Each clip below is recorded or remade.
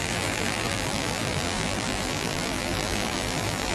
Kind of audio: remade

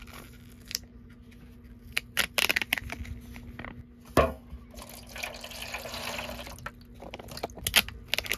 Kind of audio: recorded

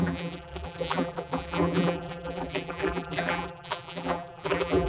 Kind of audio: remade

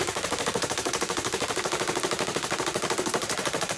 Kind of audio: remade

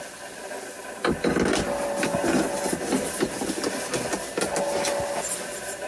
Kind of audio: recorded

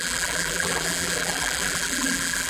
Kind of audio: remade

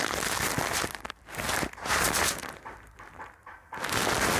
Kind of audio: remade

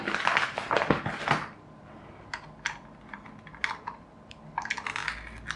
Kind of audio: recorded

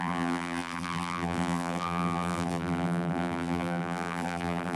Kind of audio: remade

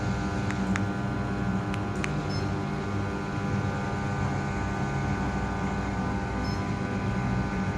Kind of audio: recorded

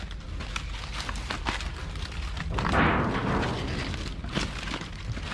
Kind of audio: recorded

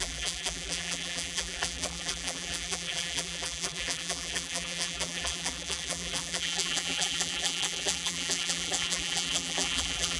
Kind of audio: remade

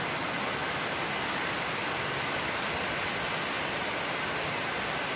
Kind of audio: recorded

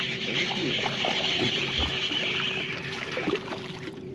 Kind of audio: remade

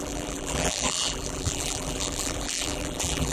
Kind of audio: remade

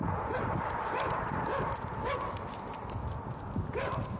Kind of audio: recorded